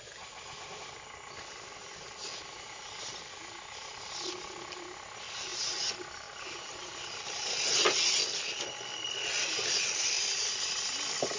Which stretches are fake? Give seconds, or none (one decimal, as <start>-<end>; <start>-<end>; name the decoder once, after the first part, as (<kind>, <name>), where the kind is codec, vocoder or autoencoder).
none